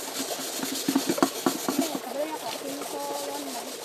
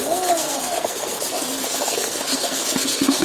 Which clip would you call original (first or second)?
first